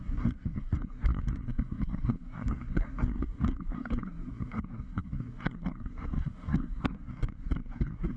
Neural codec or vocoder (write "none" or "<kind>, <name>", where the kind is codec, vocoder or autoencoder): codec, SNAC